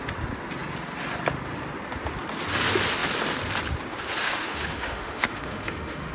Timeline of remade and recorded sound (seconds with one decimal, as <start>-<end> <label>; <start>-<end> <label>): 0.0-4.2 recorded; 4.2-6.1 remade